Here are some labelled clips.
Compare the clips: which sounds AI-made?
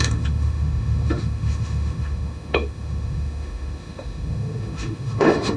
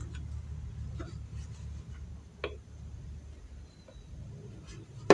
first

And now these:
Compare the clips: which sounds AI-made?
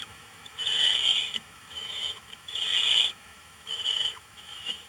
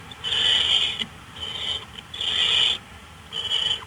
first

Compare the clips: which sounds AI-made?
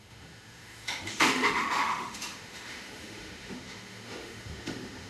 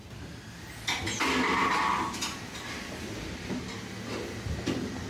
first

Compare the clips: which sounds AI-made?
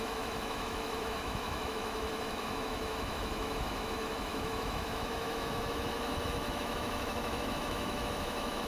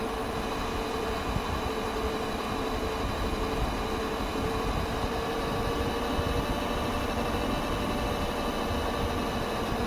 first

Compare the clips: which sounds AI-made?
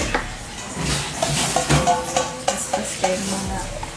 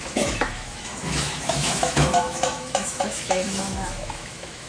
second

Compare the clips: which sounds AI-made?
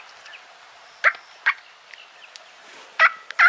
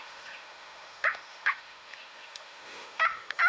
second